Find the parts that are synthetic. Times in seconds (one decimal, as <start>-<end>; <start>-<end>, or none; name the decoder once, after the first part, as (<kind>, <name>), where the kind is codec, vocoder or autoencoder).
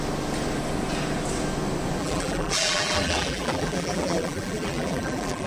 2.0-5.5 (vocoder, BigVGAN v2)